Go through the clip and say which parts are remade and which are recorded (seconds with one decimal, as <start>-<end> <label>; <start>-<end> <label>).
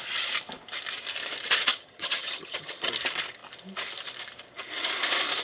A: 0.0-1.7 recorded; 1.7-2.9 remade; 2.9-5.4 recorded